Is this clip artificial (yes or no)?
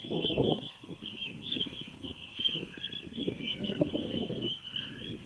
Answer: yes